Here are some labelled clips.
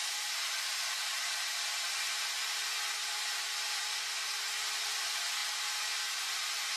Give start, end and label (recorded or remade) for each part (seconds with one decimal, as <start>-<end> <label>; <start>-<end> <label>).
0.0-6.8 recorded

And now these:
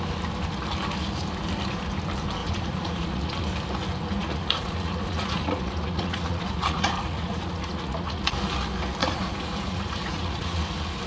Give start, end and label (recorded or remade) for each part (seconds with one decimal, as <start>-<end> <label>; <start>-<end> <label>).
0.0-2.4 recorded; 2.4-3.4 remade; 3.4-4.2 recorded; 4.2-8.2 remade; 8.2-9.0 recorded; 9.0-10.6 remade; 10.6-11.1 recorded

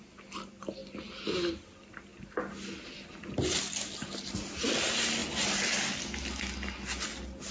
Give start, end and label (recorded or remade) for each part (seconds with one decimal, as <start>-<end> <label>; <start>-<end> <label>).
0.0-7.5 recorded

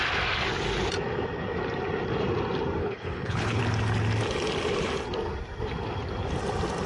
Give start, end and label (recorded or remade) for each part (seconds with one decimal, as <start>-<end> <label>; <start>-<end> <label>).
0.0-2.8 recorded; 2.8-3.6 remade; 3.6-6.9 recorded

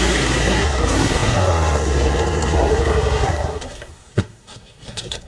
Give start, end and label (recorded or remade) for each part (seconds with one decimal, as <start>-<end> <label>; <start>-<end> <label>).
0.0-5.3 remade

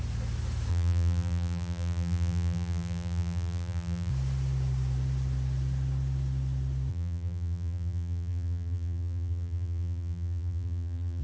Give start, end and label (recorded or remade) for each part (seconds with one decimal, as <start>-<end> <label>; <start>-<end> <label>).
0.0-0.7 recorded; 0.7-4.1 remade; 4.1-6.9 recorded; 6.9-11.2 remade

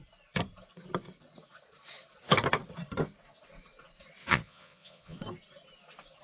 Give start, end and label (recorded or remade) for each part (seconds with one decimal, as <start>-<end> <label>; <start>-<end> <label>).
0.0-4.2 recorded; 4.2-5.2 remade; 5.2-6.2 recorded

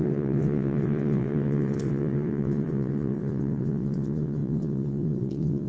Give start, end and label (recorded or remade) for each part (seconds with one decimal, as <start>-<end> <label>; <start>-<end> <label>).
0.0-5.7 remade